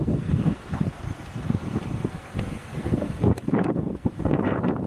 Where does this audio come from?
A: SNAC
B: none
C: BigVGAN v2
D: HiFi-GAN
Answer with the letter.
A